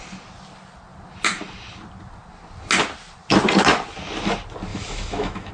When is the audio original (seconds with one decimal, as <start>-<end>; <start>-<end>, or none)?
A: 0.0-4.7